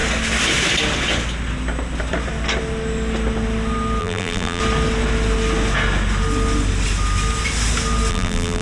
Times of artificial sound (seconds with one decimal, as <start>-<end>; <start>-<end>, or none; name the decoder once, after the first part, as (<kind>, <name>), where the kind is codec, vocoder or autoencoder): 4.0-4.6 (vocoder, BigVGAN v2); 8.1-8.6